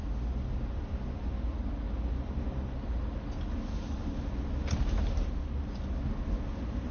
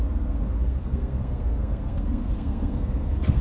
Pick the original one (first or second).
first